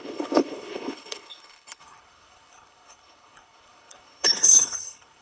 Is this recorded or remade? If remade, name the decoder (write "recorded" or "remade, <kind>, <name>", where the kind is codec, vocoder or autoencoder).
remade, codec, HILCodec